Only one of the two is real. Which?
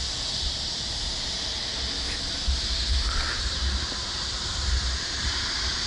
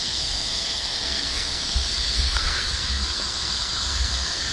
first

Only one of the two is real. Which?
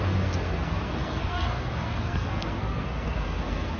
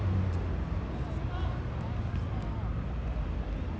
second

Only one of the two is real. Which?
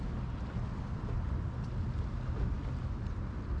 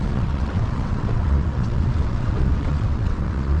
first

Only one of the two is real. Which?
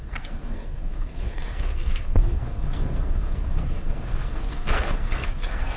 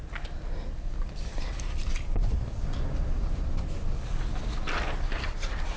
second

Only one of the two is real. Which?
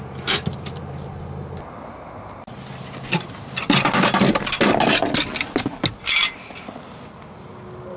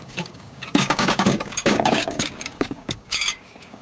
first